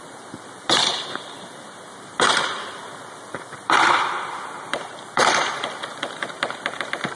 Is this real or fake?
fake